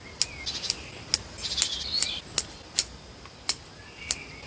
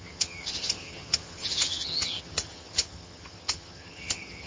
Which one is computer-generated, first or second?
second